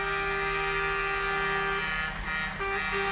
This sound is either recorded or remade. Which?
recorded